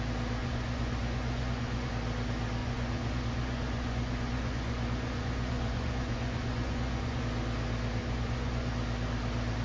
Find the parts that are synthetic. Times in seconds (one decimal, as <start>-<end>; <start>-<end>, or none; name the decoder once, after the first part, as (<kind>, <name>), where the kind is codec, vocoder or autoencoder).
0.4-1.9 (vocoder, Vocos); 2.6-7.2; 8.0-8.7